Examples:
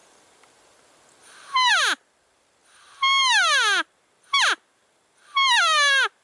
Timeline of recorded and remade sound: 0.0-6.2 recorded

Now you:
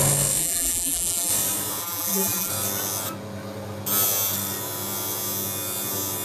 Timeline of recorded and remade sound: 0.0-0.4 recorded; 0.4-1.3 remade; 1.3-1.8 recorded; 1.8-2.5 remade; 2.5-6.2 recorded

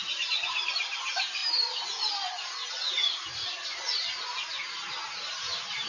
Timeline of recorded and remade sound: 0.0-1.4 remade; 1.4-4.9 recorded; 4.9-5.9 remade

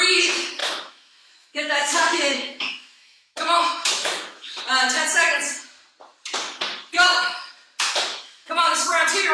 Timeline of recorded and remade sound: 0.0-0.6 recorded; 0.6-4.6 remade; 4.6-8.1 recorded; 8.1-8.7 remade; 8.7-9.3 recorded